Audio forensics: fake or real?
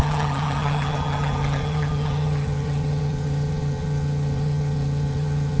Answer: fake